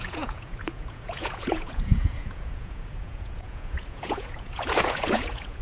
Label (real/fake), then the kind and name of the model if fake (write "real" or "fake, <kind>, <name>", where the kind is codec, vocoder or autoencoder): fake, vocoder, Vocos